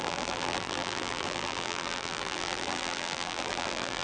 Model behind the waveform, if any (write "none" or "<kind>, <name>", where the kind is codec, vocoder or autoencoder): vocoder, BigVGAN v2